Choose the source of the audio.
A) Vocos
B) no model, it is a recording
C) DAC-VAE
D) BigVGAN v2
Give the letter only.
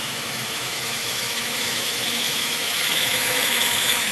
C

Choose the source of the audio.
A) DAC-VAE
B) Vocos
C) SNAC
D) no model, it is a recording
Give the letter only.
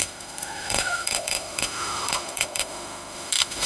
A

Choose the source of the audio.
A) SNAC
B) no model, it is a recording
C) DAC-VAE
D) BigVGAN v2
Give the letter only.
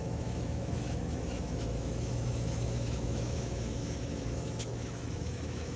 C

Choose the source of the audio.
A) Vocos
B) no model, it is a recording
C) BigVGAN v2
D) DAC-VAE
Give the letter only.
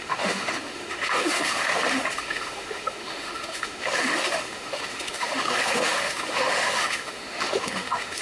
D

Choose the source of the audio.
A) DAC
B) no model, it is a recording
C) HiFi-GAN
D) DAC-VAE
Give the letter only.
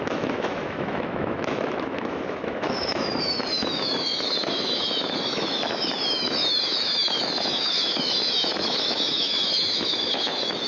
D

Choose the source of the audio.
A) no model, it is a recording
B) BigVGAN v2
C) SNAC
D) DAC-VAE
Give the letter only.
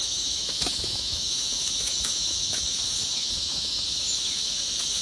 D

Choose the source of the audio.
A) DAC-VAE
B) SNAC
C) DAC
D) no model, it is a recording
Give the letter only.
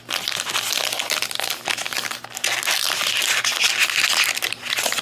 D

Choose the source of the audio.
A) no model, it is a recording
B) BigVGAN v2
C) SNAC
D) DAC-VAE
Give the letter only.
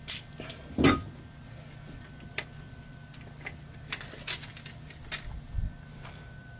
A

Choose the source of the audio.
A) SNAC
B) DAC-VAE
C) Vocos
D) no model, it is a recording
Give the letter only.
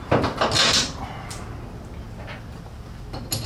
D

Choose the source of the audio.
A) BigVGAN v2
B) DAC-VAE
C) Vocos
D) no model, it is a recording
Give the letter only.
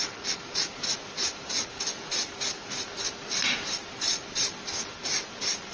D